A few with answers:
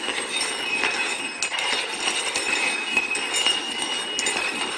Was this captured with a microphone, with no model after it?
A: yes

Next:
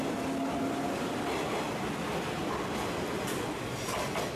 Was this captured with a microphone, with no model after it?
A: yes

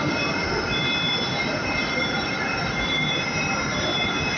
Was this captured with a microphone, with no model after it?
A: no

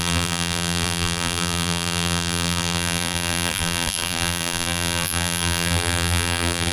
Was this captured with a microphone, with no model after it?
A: no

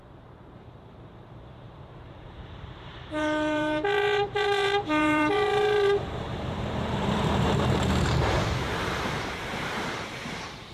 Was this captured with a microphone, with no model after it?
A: no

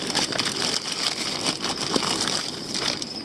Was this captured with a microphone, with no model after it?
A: no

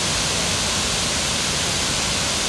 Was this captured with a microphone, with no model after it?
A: yes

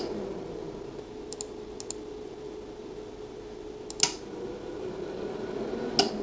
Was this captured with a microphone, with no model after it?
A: yes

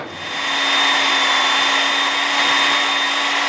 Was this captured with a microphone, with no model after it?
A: yes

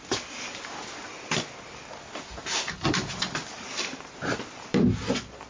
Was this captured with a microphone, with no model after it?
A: yes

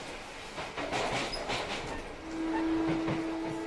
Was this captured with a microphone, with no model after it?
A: yes